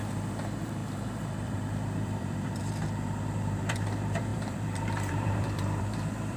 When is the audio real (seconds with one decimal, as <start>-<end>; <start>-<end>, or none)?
none